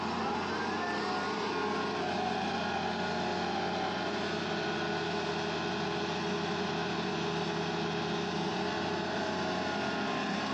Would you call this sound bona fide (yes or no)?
yes